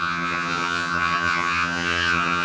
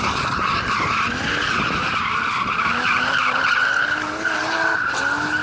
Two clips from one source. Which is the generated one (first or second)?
first